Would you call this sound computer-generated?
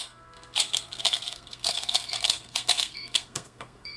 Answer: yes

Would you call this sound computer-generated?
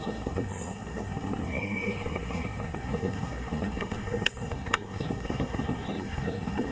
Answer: yes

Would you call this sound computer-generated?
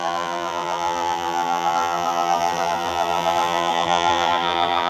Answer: yes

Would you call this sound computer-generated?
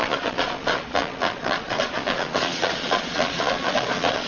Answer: yes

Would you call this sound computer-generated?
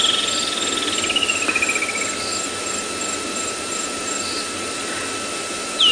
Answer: no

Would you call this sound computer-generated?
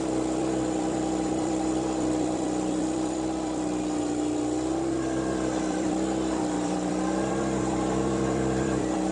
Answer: yes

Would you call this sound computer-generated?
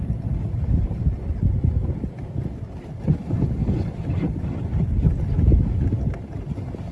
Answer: no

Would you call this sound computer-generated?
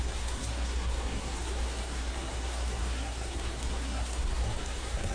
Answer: yes